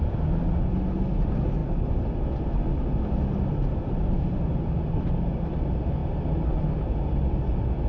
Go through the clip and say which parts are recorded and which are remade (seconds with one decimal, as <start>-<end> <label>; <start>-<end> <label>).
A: 0.0-7.9 recorded